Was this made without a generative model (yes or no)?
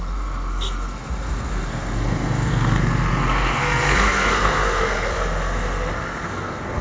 no